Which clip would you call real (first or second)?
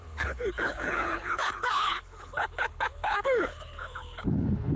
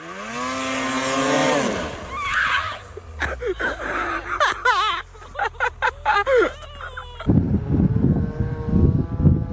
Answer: second